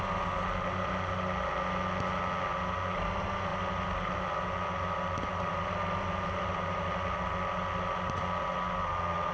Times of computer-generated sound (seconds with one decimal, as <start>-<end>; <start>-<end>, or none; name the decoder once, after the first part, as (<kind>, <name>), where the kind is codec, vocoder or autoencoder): none